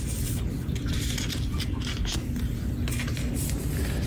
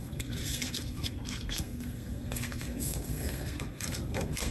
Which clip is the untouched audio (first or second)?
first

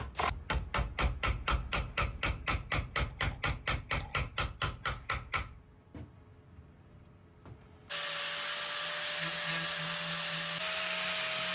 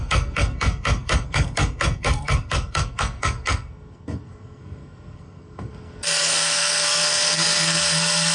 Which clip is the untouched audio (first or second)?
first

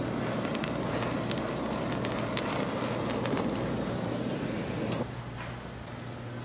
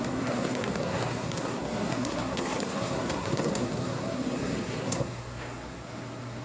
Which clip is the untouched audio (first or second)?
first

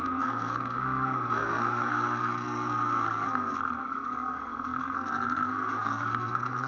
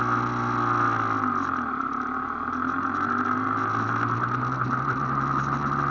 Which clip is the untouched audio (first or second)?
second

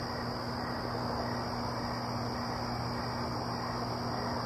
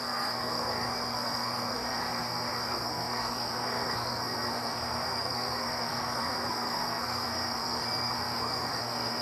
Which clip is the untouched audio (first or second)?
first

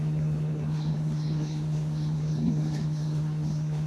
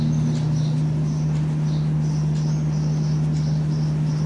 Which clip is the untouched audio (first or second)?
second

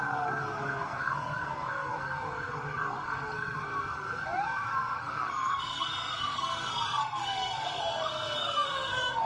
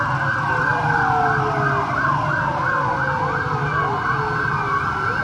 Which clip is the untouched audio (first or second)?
second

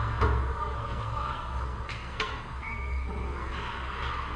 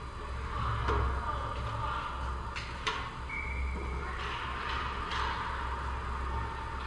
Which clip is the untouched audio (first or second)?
second